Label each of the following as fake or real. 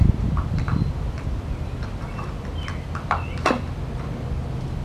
real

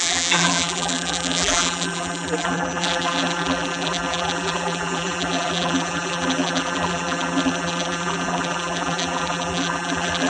fake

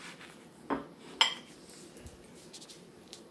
real